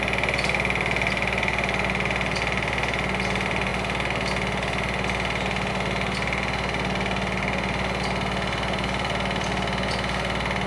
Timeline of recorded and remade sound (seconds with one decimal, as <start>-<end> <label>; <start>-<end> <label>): 0.0-10.7 recorded